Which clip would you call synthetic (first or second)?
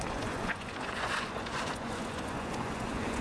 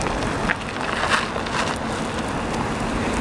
first